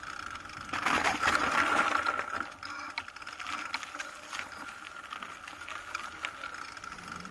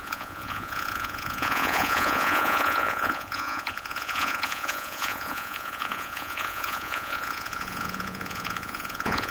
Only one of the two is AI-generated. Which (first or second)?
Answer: second